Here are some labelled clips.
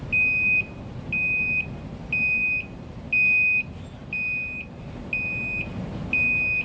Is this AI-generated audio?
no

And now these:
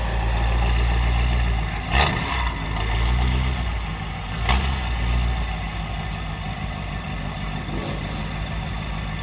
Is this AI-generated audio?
no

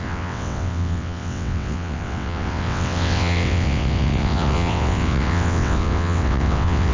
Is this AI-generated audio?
yes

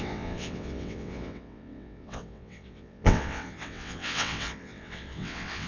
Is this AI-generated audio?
yes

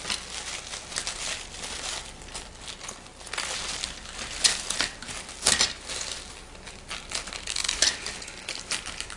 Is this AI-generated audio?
no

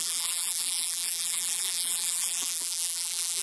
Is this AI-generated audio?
yes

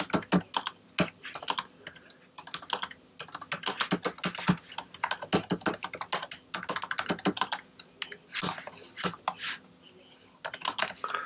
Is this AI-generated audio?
no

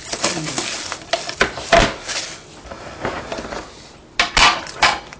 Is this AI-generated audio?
no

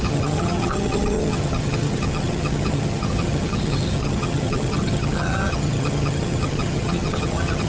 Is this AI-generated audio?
yes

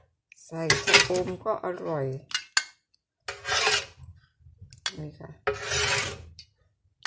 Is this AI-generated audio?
no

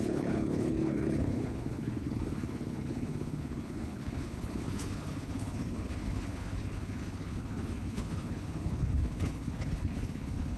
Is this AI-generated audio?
yes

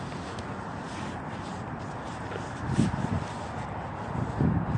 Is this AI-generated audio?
no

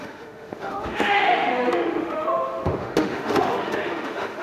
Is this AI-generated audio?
yes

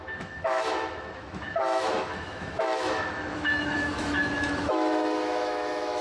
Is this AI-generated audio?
yes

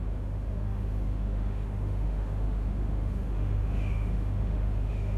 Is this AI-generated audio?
yes